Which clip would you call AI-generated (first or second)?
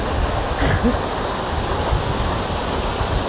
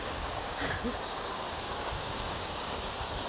second